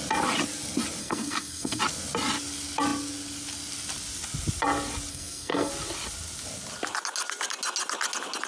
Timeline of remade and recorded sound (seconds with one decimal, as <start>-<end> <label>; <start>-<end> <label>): 0.0-1.0 recorded; 1.0-1.8 remade; 1.8-5.1 recorded; 5.1-5.7 remade; 5.7-8.5 recorded